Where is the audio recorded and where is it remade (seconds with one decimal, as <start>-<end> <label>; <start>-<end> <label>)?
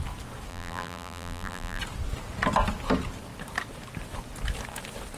0.0-0.5 recorded; 0.5-1.8 remade; 1.8-5.2 recorded